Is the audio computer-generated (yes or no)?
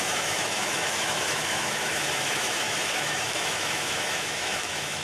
yes